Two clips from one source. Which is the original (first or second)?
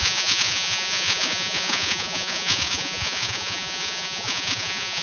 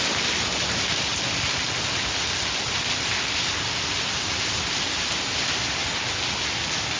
second